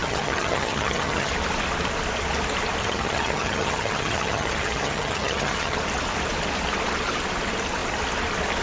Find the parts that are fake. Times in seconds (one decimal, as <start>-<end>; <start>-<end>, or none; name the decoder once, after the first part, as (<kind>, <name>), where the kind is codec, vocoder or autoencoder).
0.0-1.3 (vocoder, HiFi-GAN); 2.8-5.8